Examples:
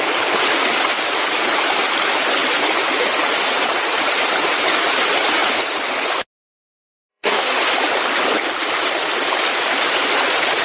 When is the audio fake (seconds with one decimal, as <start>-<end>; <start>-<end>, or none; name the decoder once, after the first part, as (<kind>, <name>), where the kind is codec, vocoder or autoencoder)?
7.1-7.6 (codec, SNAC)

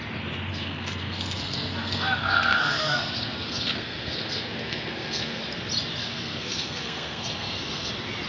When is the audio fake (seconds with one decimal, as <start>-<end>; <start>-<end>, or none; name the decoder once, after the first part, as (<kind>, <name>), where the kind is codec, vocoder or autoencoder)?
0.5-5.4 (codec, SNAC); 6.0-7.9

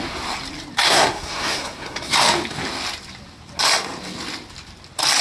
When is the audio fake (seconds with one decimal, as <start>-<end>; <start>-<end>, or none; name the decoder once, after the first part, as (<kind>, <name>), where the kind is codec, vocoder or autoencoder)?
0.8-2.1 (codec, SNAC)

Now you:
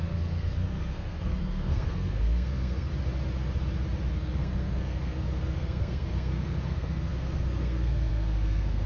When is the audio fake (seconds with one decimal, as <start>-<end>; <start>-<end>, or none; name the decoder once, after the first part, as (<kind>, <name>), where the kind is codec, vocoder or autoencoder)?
0.0-2.9 (codec, SNAC); 4.1-8.9